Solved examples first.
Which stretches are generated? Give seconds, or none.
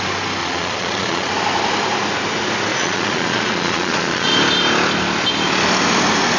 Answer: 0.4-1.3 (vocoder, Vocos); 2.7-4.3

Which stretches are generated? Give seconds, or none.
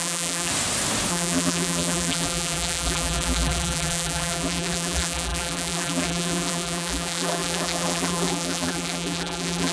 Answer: 0.0-0.5 (vocoder, BigVGAN v2); 1.1-9.7